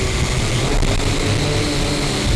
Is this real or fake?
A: real